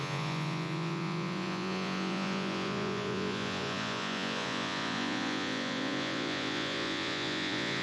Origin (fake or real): fake